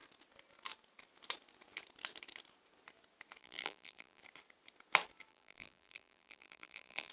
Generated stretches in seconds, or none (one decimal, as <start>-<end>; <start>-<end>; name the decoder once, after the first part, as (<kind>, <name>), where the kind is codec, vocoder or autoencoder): 3.4-4.2 (vocoder, BigVGAN v2); 5.3-7.1